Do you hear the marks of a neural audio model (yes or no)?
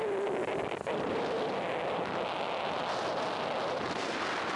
no